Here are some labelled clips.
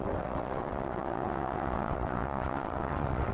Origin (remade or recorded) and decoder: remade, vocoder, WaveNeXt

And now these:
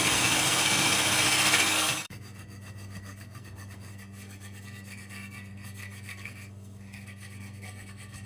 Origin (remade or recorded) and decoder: remade, codec, SNAC